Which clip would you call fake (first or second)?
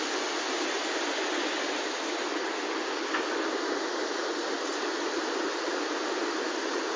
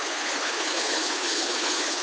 second